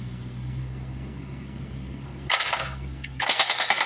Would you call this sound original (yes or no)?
no